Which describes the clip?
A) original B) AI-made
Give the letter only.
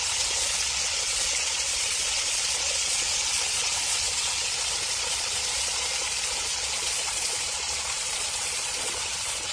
B